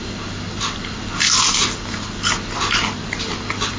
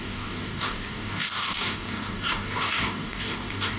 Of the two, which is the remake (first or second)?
second